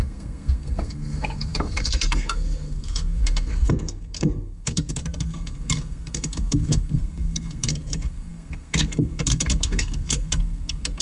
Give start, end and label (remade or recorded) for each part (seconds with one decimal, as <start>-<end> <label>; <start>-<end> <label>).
0.0-11.0 remade